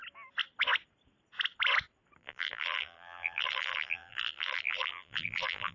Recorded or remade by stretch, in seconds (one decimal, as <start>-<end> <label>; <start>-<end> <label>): 0.0-2.2 recorded; 2.2-5.7 remade